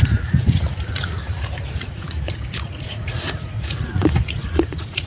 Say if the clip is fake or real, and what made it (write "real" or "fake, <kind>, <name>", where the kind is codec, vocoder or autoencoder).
fake, vocoder, Vocos